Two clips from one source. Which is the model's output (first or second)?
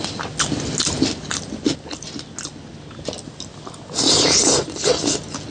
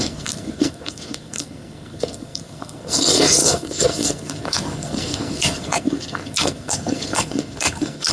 second